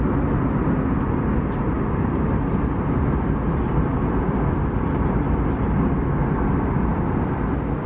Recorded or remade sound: recorded